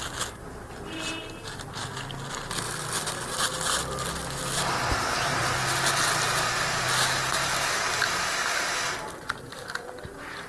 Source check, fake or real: real